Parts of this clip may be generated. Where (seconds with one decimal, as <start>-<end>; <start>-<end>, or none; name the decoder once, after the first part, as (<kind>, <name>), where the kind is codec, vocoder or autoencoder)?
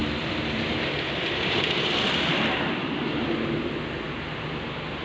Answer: 0.0-2.3 (vocoder, BigVGAN v2)